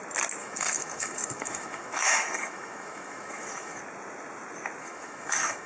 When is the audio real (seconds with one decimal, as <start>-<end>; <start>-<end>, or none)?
0.0-0.4; 3.8-4.8